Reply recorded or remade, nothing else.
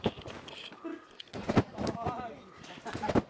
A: recorded